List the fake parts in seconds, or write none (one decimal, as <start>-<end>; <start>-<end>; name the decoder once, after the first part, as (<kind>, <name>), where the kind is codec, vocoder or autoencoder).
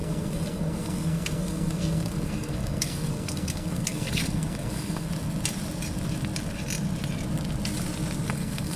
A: 0.0-5.1 (codec, SNAC); 8.3-8.8